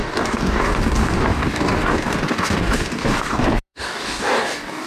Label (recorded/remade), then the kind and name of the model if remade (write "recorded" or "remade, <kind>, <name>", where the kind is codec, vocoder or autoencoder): remade, codec, DAC